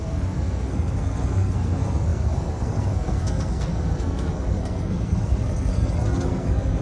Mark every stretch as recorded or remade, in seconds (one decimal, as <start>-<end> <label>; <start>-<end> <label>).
0.0-6.8 remade